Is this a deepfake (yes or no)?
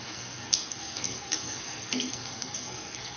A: yes